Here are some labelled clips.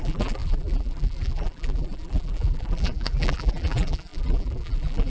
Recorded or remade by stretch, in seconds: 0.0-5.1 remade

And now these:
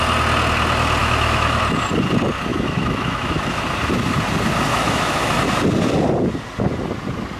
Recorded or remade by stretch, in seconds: 0.0-1.0 recorded; 1.0-1.6 remade; 1.6-2.5 recorded; 2.5-3.6 remade; 3.6-4.7 recorded; 4.7-5.4 remade; 5.4-7.4 recorded

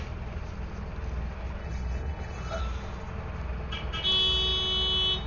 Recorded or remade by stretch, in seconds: 0.0-1.6 recorded; 1.6-2.6 remade; 2.6-5.3 recorded

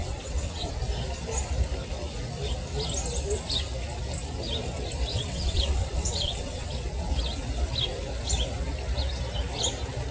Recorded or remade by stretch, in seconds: 0.0-0.7 remade; 0.7-5.1 recorded; 5.1-6.7 remade; 6.7-10.1 recorded

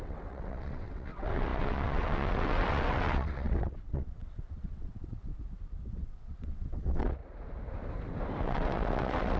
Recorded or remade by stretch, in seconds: 0.0-5.3 remade; 5.3-5.9 recorded; 5.9-7.2 remade; 7.2-8.4 recorded; 8.4-9.4 remade

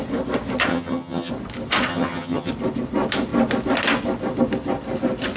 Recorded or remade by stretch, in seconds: 0.0-0.7 recorded; 0.7-1.3 remade; 1.3-1.9 recorded; 1.9-2.5 remade; 2.5-5.4 recorded

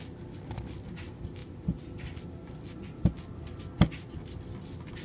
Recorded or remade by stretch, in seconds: 0.0-5.0 recorded

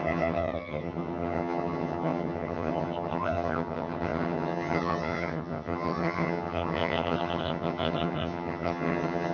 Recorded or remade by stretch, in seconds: 0.0-9.3 remade